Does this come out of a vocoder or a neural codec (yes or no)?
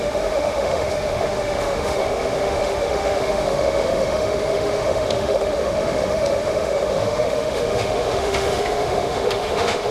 yes